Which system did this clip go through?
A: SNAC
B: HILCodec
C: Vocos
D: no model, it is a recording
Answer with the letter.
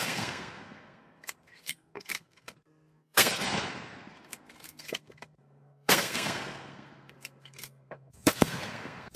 A